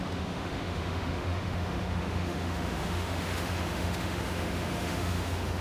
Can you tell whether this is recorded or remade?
remade